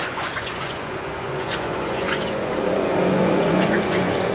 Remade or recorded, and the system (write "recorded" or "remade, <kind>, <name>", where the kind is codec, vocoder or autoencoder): remade, vocoder, Vocos